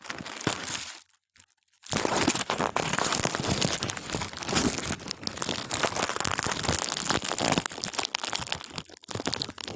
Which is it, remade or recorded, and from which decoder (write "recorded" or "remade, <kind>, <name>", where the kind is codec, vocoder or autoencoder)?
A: recorded